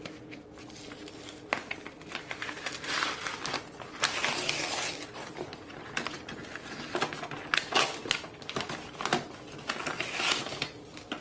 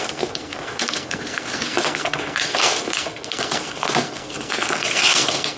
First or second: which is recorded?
first